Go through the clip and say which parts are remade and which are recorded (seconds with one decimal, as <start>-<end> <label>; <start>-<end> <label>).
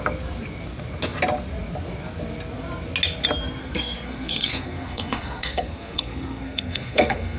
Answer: 0.0-3.6 recorded; 3.6-7.4 remade